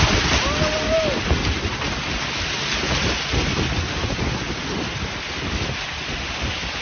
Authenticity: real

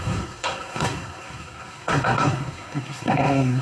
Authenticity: fake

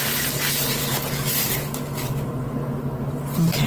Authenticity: real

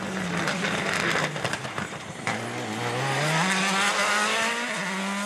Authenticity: real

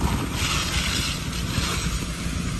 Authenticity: real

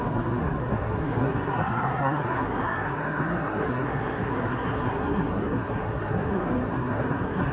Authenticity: fake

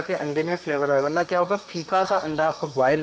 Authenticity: fake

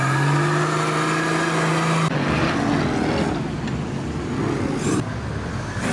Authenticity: real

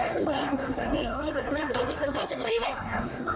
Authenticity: fake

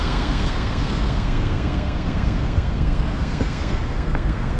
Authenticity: fake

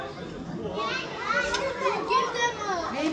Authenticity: real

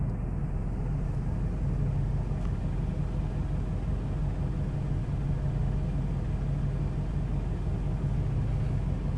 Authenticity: real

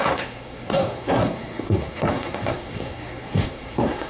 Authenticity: fake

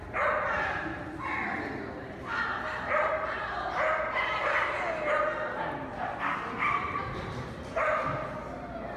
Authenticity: real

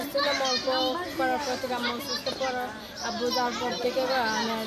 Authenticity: real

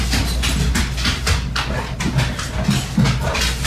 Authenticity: real